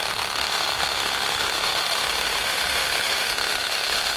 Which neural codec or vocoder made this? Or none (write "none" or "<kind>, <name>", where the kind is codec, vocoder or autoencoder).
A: autoencoder, DAC-VAE